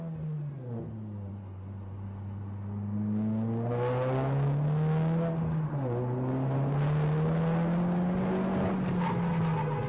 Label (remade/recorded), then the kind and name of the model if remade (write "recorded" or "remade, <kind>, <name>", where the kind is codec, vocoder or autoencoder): recorded